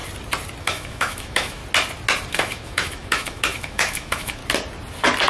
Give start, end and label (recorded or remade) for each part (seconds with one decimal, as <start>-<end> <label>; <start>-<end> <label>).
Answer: 0.0-0.6 recorded; 0.6-1.6 remade; 1.6-2.3 recorded; 2.3-4.4 remade; 4.4-5.3 recorded